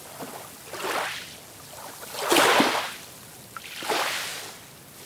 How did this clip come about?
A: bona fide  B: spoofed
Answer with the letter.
A